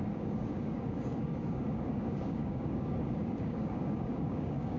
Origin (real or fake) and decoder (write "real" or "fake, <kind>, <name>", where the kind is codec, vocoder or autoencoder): fake, codec, DAC